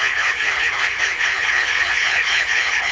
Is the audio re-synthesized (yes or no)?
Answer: yes